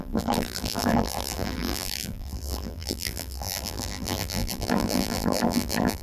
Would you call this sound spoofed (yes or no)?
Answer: yes